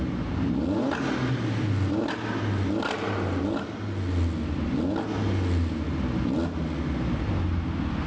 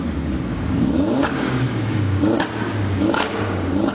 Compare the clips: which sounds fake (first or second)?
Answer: second